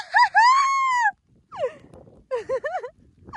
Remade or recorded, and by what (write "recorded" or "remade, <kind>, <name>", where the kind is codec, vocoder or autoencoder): recorded